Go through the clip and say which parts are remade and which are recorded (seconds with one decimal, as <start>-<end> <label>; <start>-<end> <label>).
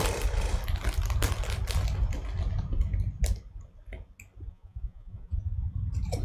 0.0-4.5 recorded; 4.5-5.7 remade; 5.7-6.2 recorded